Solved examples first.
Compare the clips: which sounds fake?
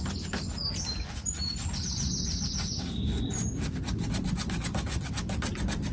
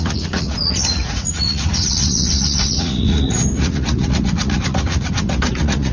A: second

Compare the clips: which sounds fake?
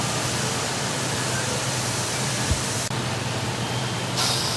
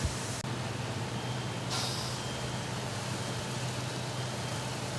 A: first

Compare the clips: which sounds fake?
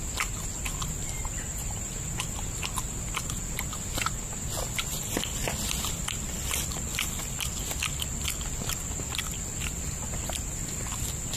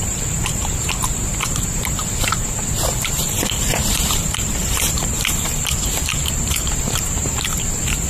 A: second